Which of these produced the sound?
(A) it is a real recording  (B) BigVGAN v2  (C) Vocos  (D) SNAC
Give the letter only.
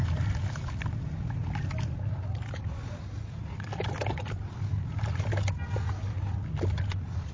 A